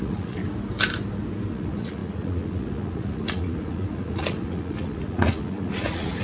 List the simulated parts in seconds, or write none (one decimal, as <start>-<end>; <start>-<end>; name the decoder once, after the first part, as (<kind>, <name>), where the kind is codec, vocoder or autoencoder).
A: 0.0-0.4 (vocoder, Vocos); 1.5-6.2